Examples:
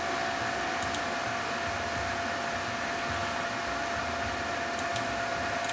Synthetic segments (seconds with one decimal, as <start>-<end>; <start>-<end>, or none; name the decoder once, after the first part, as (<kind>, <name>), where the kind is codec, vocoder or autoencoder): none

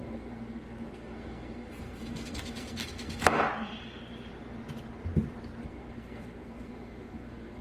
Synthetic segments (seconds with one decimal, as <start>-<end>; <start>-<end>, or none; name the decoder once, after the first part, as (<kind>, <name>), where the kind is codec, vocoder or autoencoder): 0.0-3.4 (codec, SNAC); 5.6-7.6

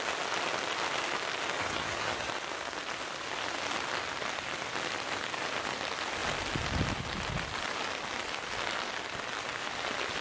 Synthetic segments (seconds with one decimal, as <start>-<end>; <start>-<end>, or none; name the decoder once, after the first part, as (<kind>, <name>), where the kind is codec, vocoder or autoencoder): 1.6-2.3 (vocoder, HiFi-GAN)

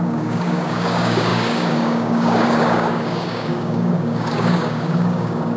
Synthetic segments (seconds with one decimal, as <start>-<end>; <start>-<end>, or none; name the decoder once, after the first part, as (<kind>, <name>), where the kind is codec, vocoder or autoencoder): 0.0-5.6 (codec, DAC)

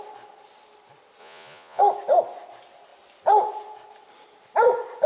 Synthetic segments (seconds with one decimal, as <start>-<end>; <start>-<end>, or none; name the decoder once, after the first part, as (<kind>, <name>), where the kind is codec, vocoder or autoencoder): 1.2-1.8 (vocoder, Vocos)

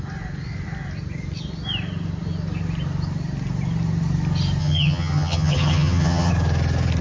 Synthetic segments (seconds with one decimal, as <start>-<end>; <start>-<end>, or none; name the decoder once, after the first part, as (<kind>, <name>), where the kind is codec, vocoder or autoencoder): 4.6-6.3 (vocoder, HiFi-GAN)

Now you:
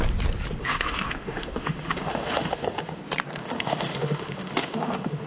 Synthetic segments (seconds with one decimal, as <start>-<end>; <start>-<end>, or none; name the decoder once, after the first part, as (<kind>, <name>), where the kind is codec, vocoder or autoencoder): 0.6-3.0 (autoencoder, DAC-VAE); 3.4-5.3